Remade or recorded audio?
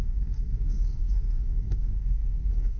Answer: remade